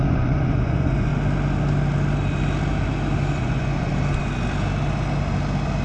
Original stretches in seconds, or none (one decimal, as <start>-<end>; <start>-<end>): 1.1-3.4; 3.9-5.8